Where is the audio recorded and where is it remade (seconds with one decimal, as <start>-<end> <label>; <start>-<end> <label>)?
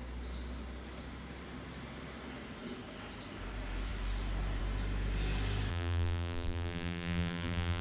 0.0-5.7 recorded; 5.7-7.8 remade